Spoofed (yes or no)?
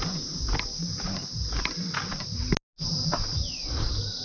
no